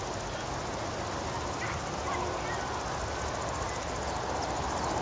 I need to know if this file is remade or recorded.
recorded